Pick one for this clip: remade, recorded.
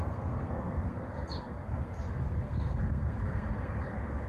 remade